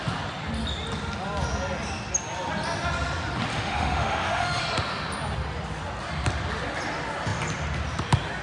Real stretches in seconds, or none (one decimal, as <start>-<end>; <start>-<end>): 0.0-3.5; 4.6-8.4